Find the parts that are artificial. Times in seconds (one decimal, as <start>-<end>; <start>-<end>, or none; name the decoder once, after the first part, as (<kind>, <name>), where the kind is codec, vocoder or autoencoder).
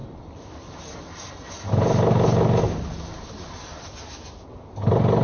none